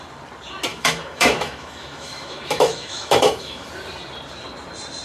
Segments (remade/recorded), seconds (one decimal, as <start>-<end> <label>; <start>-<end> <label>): 0.0-0.7 recorded; 0.7-3.7 remade; 3.7-5.0 recorded